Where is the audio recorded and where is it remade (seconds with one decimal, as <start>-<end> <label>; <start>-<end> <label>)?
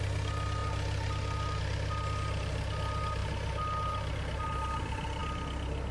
0.0-5.9 recorded